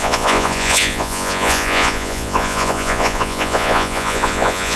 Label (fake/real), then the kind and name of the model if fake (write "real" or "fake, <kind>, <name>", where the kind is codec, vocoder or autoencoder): fake, vocoder, Vocos